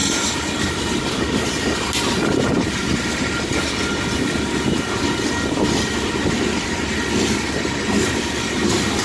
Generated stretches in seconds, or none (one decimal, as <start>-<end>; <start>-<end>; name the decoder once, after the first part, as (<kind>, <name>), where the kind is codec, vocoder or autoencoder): none

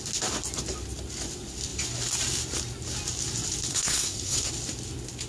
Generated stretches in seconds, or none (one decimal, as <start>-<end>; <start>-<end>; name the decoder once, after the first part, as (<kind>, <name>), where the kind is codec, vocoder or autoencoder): 3.7-4.5 (codec, SNAC)

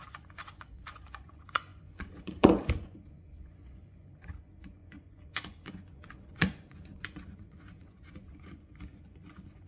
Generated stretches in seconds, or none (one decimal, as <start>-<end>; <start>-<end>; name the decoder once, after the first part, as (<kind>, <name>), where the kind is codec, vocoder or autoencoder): 0.0-9.7 (vocoder, Vocos)

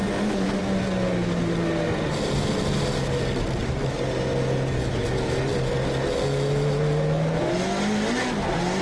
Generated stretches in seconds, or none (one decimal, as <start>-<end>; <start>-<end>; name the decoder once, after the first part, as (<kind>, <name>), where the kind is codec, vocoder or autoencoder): 0.0-0.6 (codec, DAC)

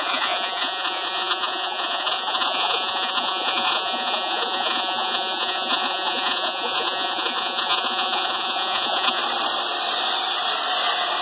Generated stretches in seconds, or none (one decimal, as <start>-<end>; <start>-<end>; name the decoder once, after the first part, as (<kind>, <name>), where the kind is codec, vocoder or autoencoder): 0.0-9.2 (vocoder, Vocos)

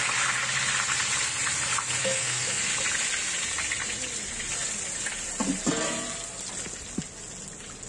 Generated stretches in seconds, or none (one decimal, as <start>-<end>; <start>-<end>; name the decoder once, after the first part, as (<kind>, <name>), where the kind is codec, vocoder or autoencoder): 2.0-2.6 (codec, SNAC)

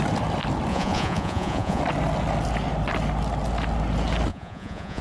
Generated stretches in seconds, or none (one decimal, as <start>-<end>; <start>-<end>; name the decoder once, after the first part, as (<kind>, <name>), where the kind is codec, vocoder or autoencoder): 0.7-1.8 (vocoder, Vocos); 4.3-5.0

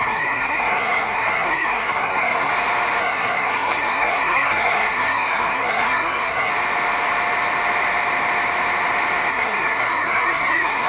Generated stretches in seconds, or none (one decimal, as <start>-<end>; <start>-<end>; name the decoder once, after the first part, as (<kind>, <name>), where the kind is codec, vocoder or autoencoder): 0.0-2.5 (codec, SNAC); 3.0-6.5; 9.3-10.9